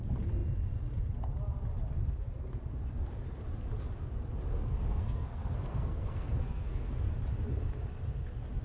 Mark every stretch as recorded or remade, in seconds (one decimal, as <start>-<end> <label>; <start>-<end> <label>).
0.0-4.6 recorded; 4.6-7.1 remade; 7.1-8.6 recorded